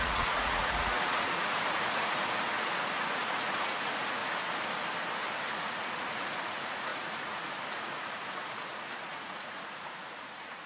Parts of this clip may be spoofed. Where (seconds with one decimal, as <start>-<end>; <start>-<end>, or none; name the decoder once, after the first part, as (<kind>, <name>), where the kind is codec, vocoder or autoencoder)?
0.0-4.2 (vocoder, Vocos); 5.5-10.7